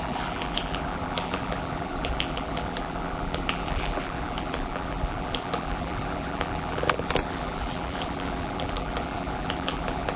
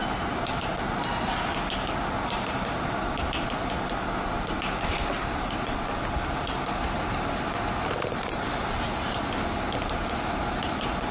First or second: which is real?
second